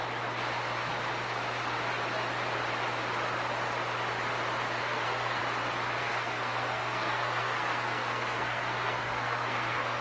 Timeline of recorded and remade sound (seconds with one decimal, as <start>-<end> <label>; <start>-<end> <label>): 0.0-4.8 recorded; 4.8-5.4 remade; 5.4-6.0 recorded; 6.0-10.0 remade